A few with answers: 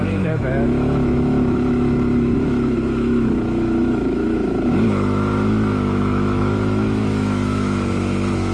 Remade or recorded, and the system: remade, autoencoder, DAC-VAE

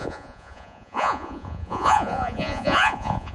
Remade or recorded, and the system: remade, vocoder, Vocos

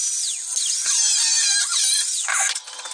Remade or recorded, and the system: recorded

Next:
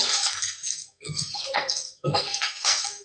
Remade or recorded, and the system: remade, codec, SNAC